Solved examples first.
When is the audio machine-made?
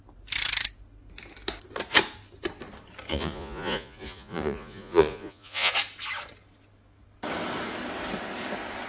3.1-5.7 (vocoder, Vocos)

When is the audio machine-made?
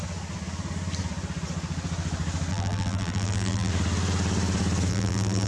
2.5-3.7 (vocoder, BigVGAN v2); 4.9-5.5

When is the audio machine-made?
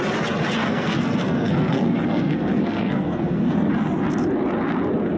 0.6-3.7 (codec, SNAC)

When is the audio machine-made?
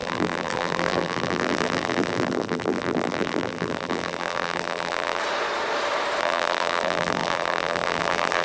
0.0-5.2 (vocoder, BigVGAN v2); 6.2-8.4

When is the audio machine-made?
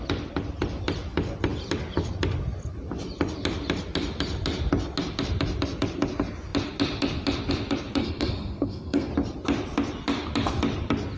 8.0-9.1 (codec, SNAC)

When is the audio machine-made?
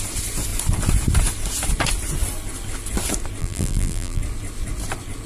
3.4-4.2 (vocoder, BigVGAN v2)